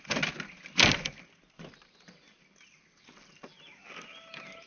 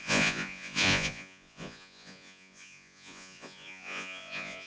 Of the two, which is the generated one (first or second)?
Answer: second